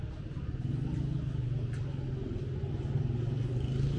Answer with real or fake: real